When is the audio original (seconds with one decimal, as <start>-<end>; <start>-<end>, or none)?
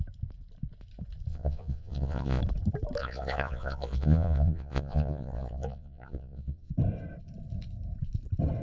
0.0-1.3; 2.4-3.0; 6.7-8.6